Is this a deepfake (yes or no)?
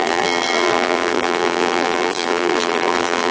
yes